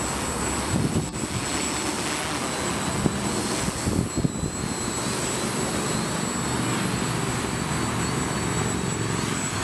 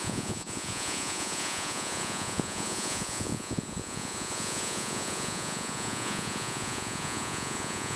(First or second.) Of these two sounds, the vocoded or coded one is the second